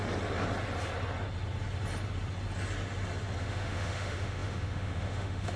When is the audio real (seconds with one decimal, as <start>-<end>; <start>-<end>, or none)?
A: 0.0-3.4

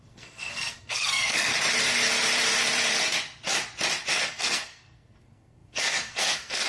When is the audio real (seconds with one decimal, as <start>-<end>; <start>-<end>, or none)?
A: 1.5-4.1